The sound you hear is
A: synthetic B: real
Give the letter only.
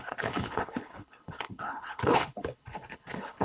A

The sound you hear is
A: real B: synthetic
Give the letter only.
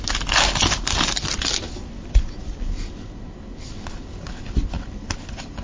A